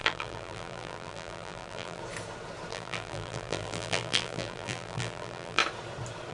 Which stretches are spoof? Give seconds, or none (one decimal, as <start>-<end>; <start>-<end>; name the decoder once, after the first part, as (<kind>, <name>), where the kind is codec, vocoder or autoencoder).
0.0-2.0 (vocoder, BigVGAN v2); 2.7-5.6